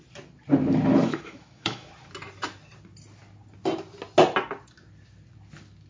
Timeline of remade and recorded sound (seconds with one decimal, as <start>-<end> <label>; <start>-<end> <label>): 0.0-1.0 recorded; 1.0-1.9 remade; 1.9-5.9 recorded